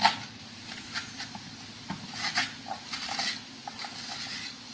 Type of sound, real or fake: real